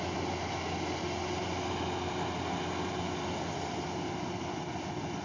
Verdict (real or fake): real